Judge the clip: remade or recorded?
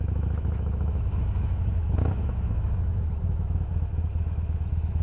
remade